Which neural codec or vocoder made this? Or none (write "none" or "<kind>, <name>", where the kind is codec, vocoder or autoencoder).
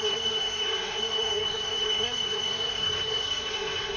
codec, SNAC